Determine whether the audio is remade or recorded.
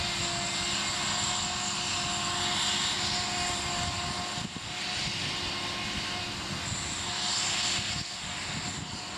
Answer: recorded